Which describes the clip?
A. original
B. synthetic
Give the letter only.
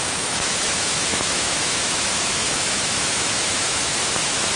B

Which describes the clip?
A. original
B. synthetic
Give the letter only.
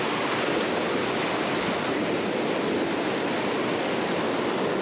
B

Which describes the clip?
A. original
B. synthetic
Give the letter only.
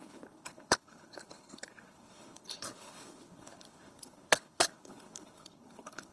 B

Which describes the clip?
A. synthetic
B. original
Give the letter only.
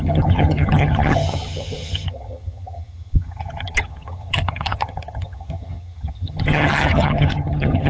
A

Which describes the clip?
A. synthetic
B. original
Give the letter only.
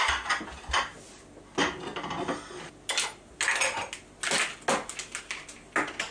B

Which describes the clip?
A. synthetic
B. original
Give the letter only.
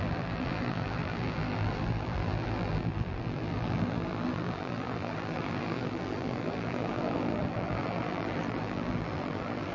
A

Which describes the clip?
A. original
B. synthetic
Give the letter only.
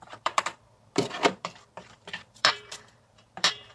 B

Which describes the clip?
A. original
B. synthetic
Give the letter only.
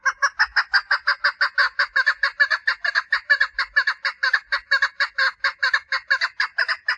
A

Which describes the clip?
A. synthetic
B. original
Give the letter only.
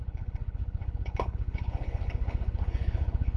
A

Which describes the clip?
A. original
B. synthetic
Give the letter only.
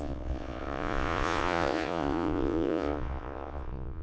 B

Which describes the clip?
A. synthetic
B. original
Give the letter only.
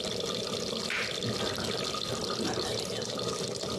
B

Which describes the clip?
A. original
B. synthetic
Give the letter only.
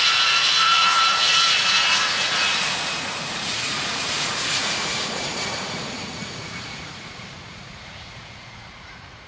B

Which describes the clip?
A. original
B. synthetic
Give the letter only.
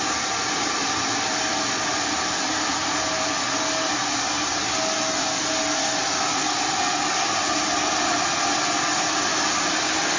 A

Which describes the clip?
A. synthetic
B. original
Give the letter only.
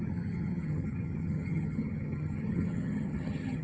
A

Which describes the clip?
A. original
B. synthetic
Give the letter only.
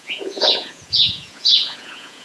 B